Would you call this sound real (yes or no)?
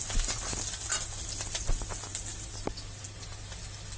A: yes